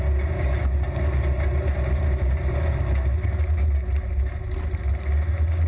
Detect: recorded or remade recorded